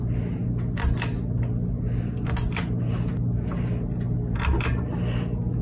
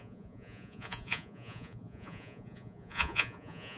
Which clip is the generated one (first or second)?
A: second